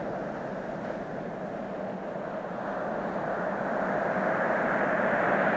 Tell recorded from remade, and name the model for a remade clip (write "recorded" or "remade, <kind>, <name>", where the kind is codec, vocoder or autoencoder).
recorded